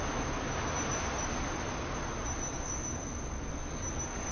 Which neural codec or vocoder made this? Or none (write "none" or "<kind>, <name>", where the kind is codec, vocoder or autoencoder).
none